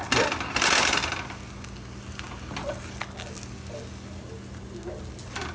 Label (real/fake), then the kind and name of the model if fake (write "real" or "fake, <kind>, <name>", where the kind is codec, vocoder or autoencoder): real